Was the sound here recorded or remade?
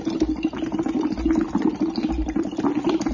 recorded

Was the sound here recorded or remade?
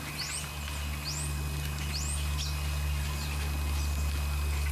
recorded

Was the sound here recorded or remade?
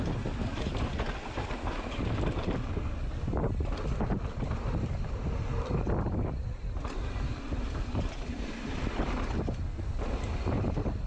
recorded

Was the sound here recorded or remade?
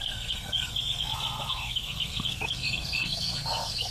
remade